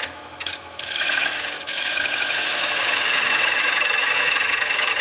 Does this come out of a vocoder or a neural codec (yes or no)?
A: yes